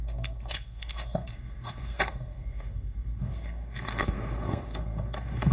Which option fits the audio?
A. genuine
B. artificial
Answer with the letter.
B